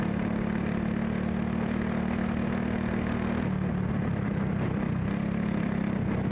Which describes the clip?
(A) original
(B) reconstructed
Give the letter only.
A